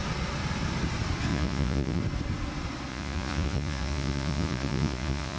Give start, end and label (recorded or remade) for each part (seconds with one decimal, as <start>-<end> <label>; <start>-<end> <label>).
0.0-1.3 recorded; 1.3-2.0 remade; 2.0-2.9 recorded; 2.9-5.4 remade